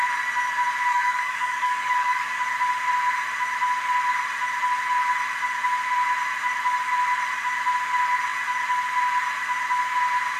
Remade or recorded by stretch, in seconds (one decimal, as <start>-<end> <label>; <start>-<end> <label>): 0.0-0.9 recorded; 0.9-2.4 remade; 2.4-10.4 recorded